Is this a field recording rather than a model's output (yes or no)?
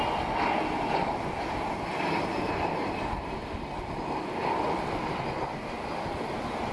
yes